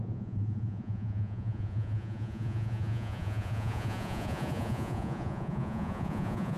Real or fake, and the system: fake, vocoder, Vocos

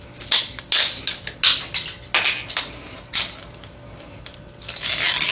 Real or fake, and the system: real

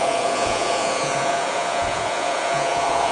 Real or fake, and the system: fake, vocoder, Vocos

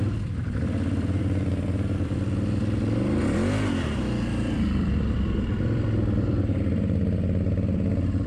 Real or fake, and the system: fake, vocoder, BigVGAN v2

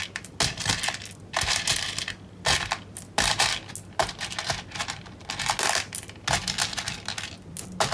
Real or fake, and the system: real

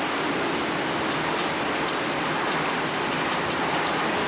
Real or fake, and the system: fake, vocoder, BigVGAN v2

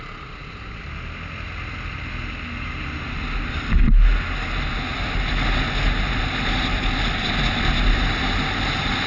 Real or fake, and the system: real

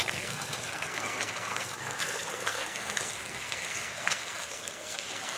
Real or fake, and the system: fake, codec, SNAC